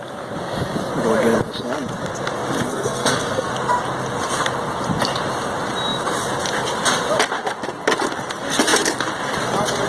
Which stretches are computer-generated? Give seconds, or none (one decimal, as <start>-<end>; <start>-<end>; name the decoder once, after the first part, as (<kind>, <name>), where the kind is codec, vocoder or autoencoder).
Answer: 2.7-3.5 (codec, SNAC)